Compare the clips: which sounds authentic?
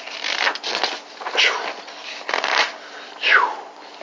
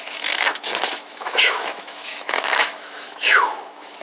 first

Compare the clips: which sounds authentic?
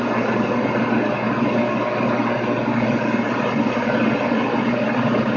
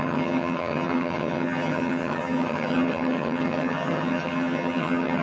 first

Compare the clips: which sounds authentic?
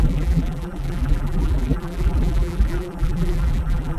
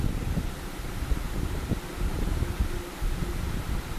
second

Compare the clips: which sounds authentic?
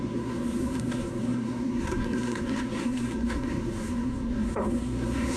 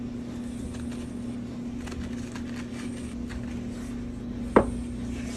second